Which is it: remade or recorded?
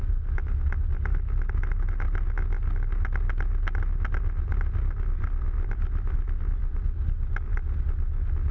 recorded